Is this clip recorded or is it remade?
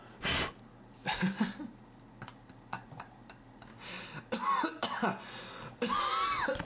recorded